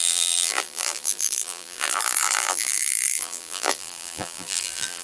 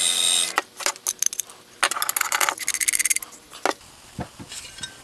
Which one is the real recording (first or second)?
second